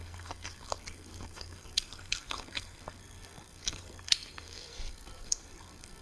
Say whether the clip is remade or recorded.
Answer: remade